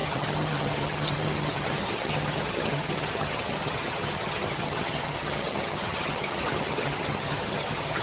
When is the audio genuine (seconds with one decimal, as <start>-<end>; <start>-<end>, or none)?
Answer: none